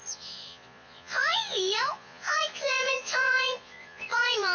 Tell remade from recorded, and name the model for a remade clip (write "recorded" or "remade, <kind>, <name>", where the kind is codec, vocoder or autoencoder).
remade, vocoder, Vocos